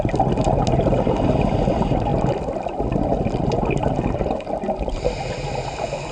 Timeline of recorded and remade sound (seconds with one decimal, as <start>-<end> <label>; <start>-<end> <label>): 0.0-6.1 recorded